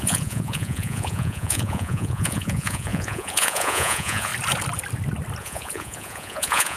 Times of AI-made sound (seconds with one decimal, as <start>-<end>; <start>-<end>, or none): 0.0-4.3; 5.4-6.8